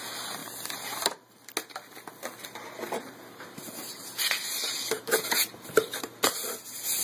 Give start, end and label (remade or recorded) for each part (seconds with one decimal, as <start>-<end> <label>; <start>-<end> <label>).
0.0-0.4 recorded; 0.4-1.5 remade; 1.5-2.8 recorded; 2.8-6.2 remade; 6.2-7.0 recorded